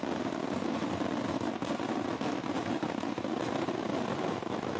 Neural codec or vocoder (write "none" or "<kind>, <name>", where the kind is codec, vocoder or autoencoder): none